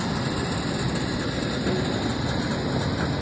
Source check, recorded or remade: recorded